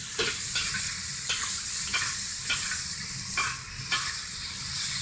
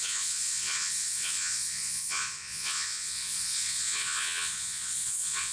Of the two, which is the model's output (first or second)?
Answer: second